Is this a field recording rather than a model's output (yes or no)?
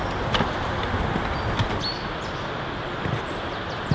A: yes